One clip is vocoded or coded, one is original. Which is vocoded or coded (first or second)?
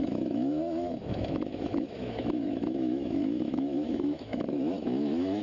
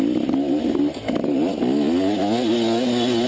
first